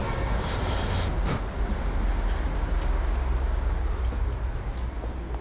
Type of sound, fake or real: real